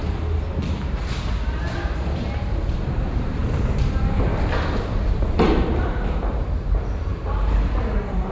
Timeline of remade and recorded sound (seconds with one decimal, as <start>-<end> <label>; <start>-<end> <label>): 0.0-1.9 recorded; 1.9-3.4 remade; 3.4-5.7 recorded; 5.7-8.3 remade